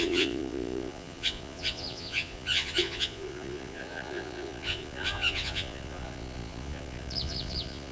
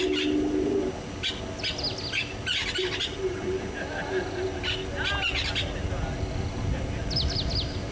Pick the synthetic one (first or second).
first